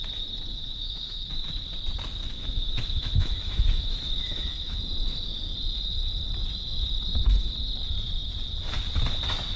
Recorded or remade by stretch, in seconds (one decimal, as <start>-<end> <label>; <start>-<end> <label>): 0.0-0.5 recorded; 0.5-1.3 remade; 1.3-2.2 recorded; 2.2-4.8 remade; 4.8-9.6 recorded